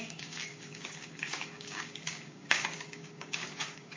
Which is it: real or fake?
fake